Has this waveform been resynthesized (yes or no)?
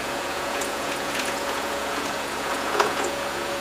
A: yes